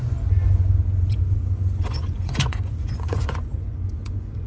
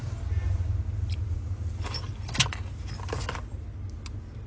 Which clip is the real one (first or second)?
second